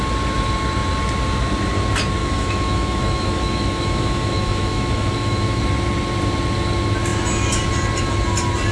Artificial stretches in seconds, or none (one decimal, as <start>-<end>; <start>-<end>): 2.2-5.6